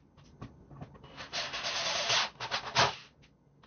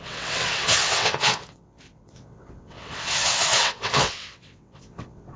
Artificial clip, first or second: second